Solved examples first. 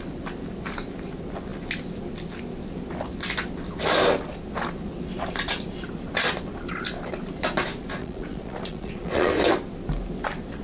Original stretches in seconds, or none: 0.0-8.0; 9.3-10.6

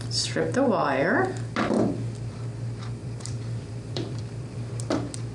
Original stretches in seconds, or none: 0.0-3.0; 4.7-5.3

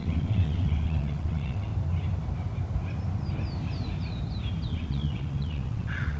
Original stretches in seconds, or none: 1.7-4.7